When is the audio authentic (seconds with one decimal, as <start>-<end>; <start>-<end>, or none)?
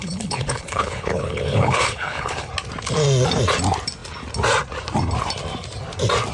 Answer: 2.5-6.3